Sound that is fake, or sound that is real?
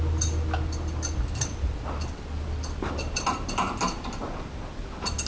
real